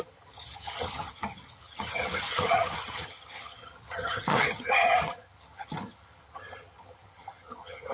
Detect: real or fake fake